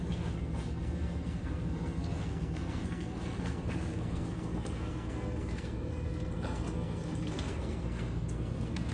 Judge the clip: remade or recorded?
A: remade